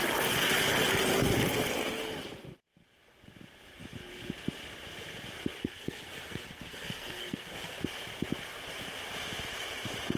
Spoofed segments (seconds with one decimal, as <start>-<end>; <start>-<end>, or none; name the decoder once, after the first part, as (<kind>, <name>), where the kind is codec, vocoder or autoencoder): 5.6-7.8 (codec, SNAC)